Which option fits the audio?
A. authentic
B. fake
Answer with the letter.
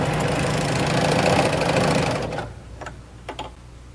A